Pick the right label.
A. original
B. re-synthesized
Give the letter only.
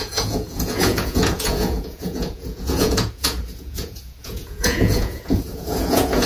B